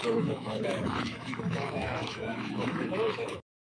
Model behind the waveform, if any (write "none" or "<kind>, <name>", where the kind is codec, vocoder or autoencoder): autoencoder, DAC-VAE